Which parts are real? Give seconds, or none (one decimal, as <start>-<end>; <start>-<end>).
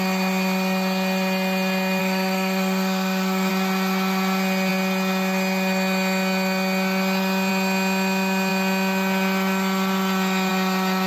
0.0-2.0; 3.5-11.1